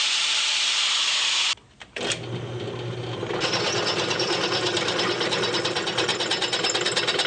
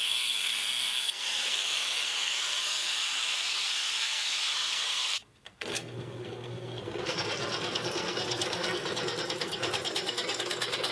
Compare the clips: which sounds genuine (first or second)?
first